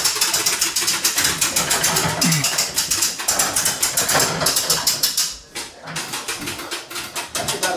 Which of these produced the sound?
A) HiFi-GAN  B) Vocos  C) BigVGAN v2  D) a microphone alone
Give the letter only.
D